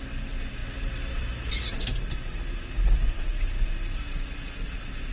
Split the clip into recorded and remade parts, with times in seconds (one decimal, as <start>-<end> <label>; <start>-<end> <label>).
0.0-5.1 recorded